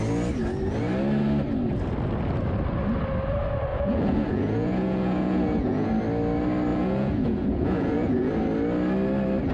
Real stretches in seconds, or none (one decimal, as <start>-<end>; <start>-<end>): 0.0-3.7; 5.9-6.7; 8.3-9.5